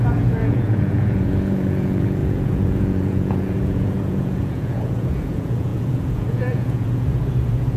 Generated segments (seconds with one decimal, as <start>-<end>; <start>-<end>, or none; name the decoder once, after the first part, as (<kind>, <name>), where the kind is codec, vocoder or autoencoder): 0.0-7.8 (vocoder, Vocos)